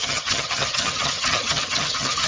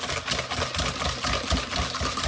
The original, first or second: second